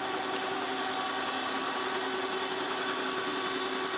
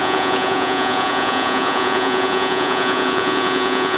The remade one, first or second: second